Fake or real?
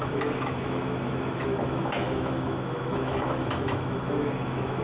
fake